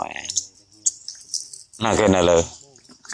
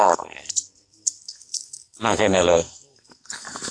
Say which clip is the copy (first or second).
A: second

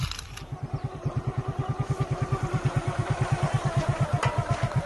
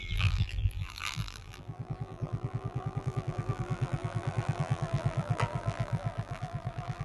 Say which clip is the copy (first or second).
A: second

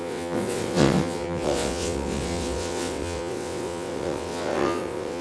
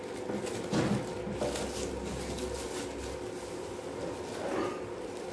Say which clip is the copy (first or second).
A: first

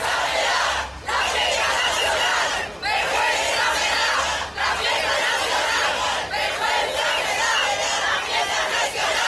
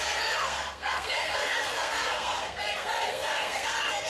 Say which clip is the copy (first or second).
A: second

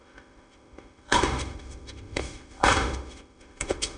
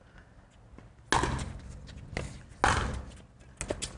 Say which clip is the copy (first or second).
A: first